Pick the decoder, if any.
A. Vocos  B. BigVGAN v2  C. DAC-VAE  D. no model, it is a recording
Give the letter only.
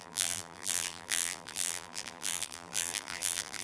B